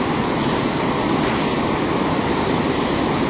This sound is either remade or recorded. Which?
recorded